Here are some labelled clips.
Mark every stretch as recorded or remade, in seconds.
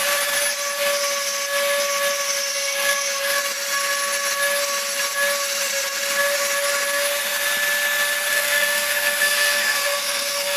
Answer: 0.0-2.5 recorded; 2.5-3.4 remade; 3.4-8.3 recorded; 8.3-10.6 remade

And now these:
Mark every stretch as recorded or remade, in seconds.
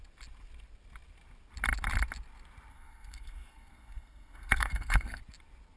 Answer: 0.0-2.7 recorded; 2.7-5.2 remade; 5.2-5.8 recorded